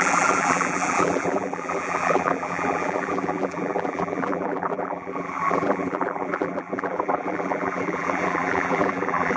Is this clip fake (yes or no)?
yes